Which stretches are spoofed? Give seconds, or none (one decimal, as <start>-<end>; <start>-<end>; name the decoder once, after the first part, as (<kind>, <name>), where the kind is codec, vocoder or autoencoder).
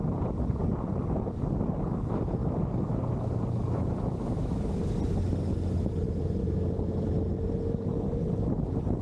2.4-4.8 (autoencoder, DAC-VAE)